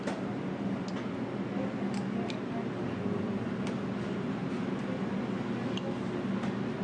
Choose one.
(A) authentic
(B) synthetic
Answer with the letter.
A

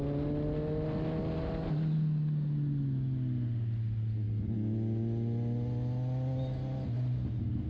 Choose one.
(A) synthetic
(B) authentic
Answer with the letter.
B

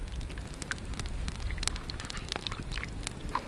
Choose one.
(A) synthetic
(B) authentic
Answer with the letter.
B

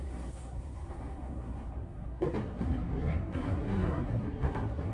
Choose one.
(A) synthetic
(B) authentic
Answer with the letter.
A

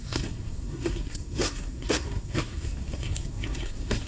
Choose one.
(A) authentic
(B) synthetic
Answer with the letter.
B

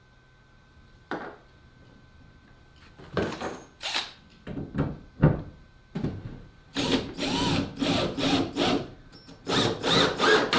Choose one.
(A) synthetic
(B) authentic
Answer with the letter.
B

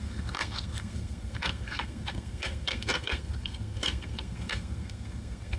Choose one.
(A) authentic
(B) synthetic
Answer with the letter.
B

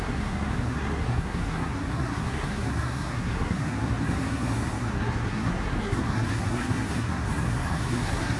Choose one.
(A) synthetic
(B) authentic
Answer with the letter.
A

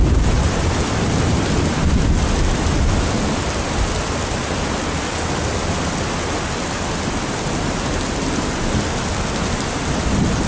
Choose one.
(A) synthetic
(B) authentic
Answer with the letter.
B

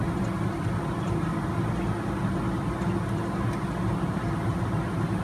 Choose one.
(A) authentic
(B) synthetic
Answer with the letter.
A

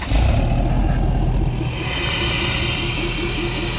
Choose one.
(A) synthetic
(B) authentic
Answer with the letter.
B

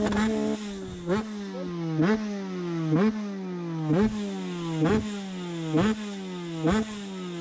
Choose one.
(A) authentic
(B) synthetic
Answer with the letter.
A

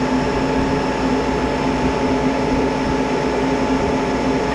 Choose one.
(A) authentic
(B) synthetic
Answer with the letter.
A